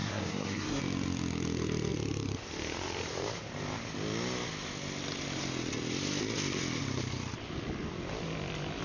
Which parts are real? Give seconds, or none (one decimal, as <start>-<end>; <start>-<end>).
0.8-8.8

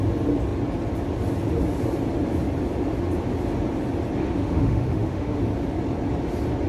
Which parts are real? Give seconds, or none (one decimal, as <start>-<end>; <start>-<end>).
0.0-4.4; 5.4-6.7

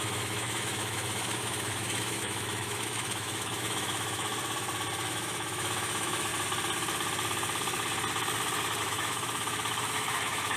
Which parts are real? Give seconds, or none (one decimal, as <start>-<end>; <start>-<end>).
4.3-5.1; 6.3-8.8

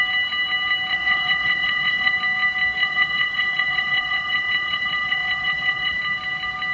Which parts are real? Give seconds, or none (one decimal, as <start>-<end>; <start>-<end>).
0.0-0.9; 2.1-2.8; 6.0-6.7

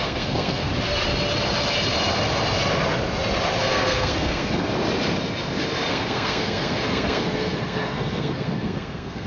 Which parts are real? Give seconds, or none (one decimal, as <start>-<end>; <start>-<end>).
0.7-3.6; 4.7-5.9

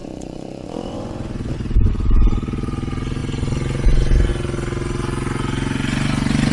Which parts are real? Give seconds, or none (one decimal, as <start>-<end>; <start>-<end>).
1.9-6.5

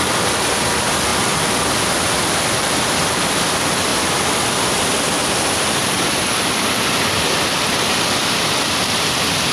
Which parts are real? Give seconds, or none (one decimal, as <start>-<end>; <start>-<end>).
1.1-2.6; 3.9-4.5